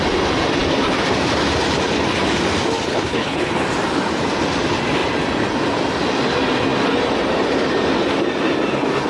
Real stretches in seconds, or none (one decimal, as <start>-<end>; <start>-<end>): 0.0-2.9; 3.5-9.1